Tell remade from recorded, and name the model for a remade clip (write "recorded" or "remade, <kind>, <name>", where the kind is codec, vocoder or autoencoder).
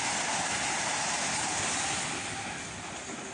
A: recorded